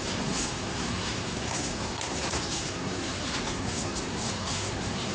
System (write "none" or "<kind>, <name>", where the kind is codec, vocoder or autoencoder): codec, SNAC